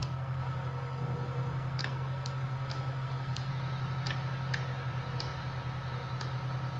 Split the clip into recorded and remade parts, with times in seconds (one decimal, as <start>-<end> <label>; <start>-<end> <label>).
0.0-3.5 remade; 3.5-6.8 recorded